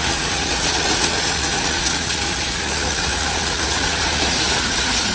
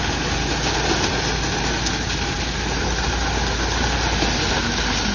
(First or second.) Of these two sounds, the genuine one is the second